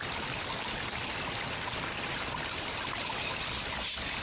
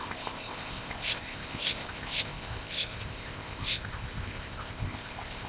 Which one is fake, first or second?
second